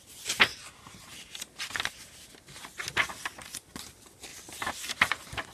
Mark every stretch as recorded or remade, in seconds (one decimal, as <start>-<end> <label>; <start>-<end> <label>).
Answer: 0.0-0.5 recorded; 0.5-1.4 remade; 1.4-4.3 recorded; 4.3-5.0 remade; 5.0-5.5 recorded